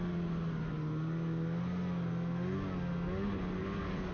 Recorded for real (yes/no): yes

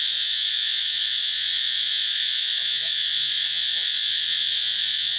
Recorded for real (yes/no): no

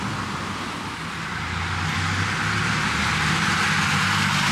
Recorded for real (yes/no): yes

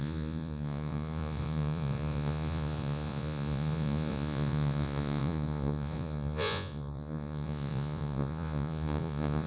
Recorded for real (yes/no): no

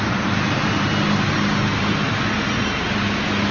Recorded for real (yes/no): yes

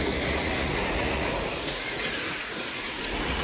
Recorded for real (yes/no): no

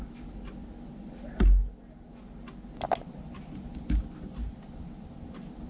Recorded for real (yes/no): yes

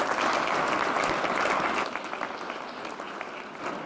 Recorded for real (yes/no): yes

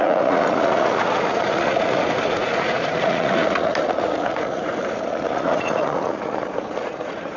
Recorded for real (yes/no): no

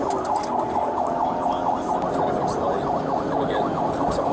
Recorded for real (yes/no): yes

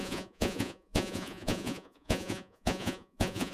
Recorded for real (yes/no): no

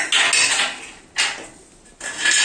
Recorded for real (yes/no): yes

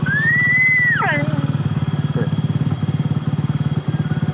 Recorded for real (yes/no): yes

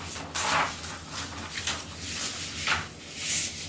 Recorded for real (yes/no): yes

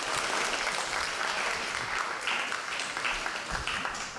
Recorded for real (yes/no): yes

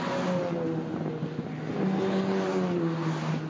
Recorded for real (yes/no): yes